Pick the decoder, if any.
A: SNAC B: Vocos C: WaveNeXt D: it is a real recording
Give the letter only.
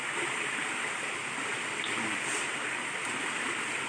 D